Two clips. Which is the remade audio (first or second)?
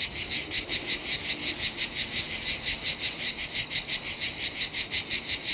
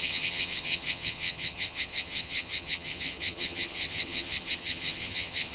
second